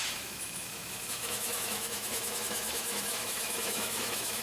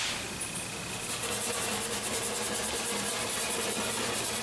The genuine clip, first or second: second